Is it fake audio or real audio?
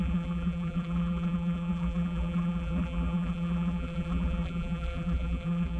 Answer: fake